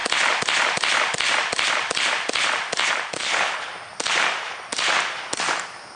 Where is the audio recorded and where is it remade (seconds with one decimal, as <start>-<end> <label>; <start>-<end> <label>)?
0.0-3.2 recorded; 3.2-3.7 remade; 3.7-6.0 recorded